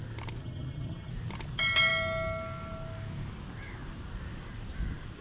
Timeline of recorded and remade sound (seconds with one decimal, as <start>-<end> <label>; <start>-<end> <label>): 0.0-0.4 recorded; 0.4-1.1 remade; 1.1-5.2 recorded